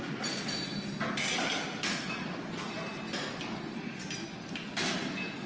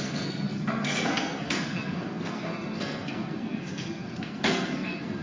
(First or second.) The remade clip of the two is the second